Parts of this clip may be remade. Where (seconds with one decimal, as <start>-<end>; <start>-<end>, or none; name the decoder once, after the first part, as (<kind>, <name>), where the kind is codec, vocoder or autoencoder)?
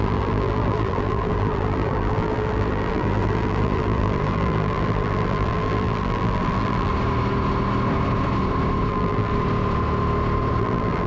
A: 0.0-6.9 (vocoder, BigVGAN v2); 8.9-9.3; 10.6-11.1